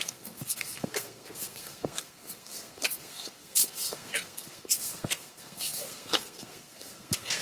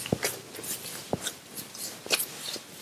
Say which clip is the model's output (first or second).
first